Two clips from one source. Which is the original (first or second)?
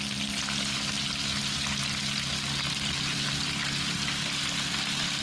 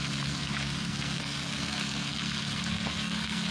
first